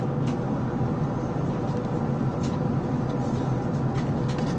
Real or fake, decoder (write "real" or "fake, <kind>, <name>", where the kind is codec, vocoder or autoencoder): real